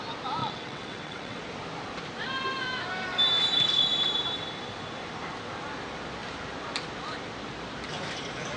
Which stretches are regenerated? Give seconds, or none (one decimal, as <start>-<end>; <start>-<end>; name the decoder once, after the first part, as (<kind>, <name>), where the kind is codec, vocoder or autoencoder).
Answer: 0.4-1.4 (vocoder, WaveNeXt)